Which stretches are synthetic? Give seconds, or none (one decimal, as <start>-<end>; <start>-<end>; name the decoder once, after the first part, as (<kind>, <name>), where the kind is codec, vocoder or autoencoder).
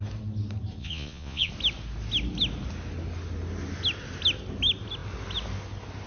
0.8-1.5 (vocoder, Vocos)